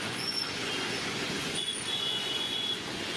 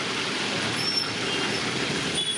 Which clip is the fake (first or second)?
first